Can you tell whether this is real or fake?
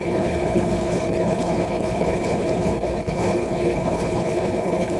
fake